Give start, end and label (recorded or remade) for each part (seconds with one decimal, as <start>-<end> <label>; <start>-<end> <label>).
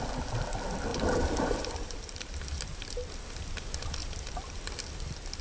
0.0-0.9 recorded; 0.9-2.9 remade; 2.9-4.0 recorded; 4.0-4.6 remade; 4.6-5.4 recorded